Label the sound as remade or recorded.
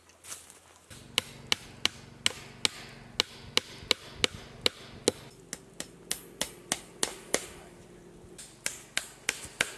recorded